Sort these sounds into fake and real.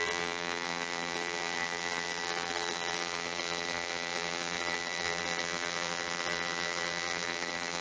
fake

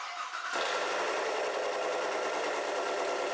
real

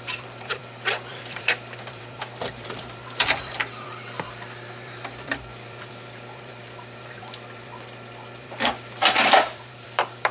fake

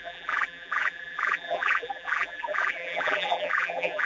fake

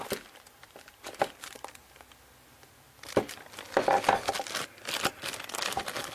real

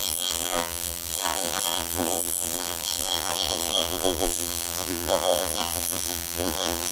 fake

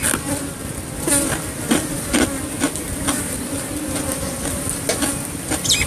real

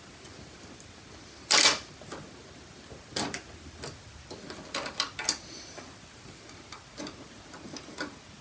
real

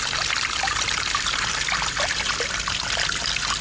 fake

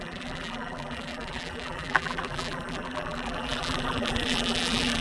fake